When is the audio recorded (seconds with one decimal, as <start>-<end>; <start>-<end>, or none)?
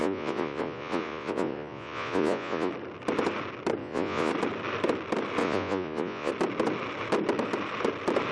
2.7-3.8; 4.3-5.4; 6.3-8.3